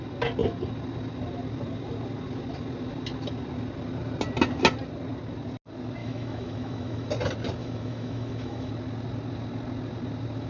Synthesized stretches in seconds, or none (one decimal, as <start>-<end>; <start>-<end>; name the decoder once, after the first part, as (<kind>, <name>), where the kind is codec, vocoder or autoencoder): 6.0-7.1 (autoencoder, DAC-VAE); 7.6-8.7